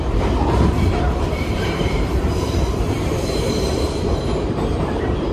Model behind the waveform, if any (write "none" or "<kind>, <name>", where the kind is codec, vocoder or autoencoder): vocoder, BigVGAN v2